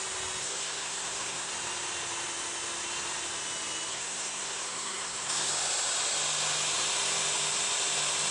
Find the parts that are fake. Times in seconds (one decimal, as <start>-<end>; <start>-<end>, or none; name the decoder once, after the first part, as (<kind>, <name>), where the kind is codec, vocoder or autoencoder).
0.4-1.5 (codec, SNAC); 3.9-5.5